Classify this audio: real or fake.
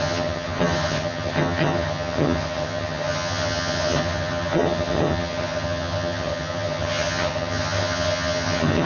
fake